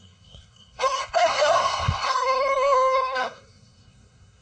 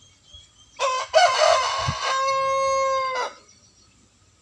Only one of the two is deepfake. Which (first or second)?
first